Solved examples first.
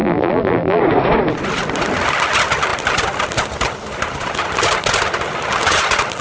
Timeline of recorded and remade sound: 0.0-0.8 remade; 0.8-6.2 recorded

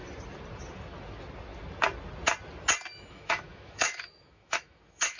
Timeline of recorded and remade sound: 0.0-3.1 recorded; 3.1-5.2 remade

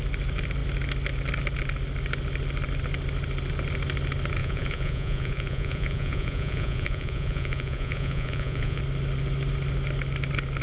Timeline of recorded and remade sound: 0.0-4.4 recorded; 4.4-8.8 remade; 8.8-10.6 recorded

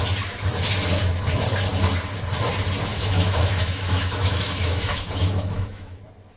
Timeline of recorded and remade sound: 0.0-2.9 recorded; 2.9-6.0 remade; 6.0-6.4 recorded